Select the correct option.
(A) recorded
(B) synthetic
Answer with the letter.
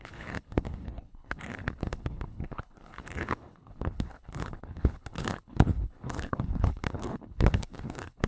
B